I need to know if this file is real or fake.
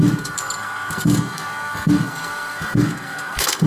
fake